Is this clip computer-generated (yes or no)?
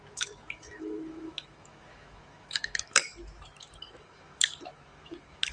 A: yes